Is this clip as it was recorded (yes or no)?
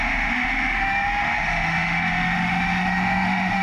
no